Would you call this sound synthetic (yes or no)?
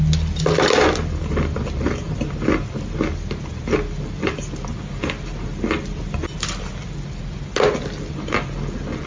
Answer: no